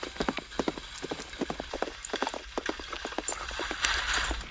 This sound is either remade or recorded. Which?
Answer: recorded